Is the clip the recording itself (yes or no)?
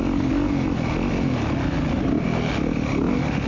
yes